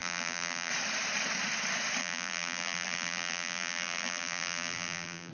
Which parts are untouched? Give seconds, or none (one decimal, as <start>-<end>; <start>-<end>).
0.7-2.0